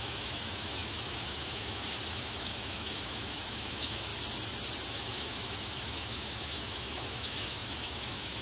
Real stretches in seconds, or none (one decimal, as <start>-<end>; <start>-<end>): 4.1-4.9